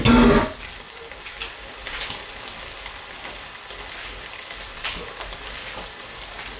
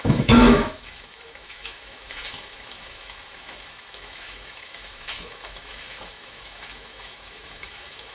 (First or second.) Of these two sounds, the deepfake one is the second